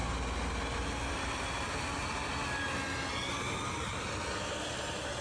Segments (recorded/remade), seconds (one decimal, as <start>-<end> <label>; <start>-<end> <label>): 0.0-5.2 recorded